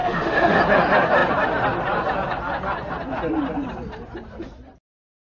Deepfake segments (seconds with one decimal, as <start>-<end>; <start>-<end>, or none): 0.0-0.6